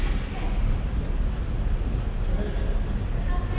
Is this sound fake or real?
real